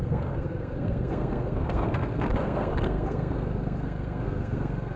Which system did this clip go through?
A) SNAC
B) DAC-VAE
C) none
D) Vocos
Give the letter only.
A